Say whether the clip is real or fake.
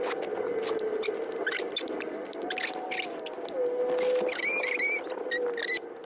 real